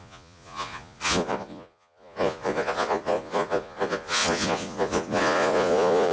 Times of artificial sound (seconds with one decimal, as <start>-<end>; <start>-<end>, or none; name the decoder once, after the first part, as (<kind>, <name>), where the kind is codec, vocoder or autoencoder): 0.0-6.1 (vocoder, Vocos)